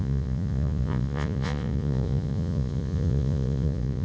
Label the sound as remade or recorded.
remade